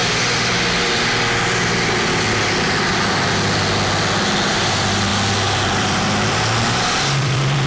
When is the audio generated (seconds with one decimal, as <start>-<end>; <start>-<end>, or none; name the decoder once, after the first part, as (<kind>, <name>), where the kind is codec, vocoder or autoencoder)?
4.6-7.7 (vocoder, BigVGAN v2)

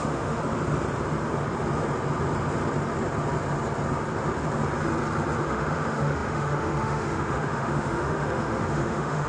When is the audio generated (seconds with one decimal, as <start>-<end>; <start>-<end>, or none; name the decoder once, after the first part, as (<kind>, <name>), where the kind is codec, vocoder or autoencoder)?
0.0-0.4 (autoencoder, DAC-VAE); 5.4-9.3

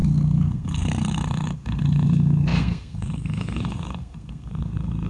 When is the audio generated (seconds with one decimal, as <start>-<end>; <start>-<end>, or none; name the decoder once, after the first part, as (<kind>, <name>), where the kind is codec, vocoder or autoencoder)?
0.0-5.1 (codec, SNAC)

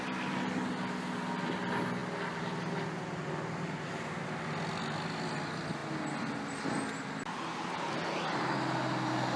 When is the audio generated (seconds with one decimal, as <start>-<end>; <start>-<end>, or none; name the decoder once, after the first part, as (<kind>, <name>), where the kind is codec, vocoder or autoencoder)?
none

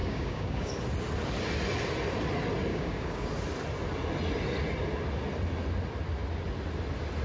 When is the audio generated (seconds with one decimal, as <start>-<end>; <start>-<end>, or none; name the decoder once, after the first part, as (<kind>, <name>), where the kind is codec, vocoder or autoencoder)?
0.0-0.7 (codec, DAC); 2.7-3.3